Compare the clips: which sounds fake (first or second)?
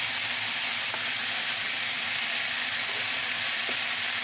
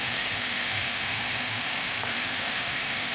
second